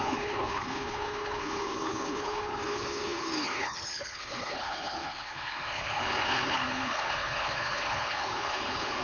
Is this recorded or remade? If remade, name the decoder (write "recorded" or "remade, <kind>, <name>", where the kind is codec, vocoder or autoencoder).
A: remade, codec, HILCodec